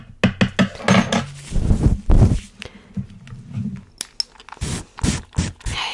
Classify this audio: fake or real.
real